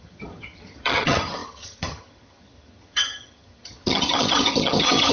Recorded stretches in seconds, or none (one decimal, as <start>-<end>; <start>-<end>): none